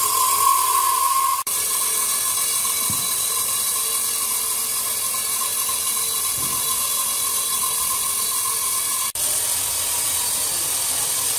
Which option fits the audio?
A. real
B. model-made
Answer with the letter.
A